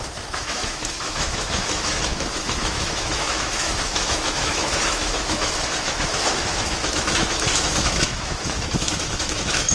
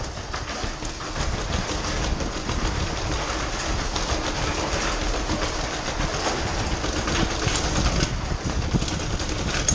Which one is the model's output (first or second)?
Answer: first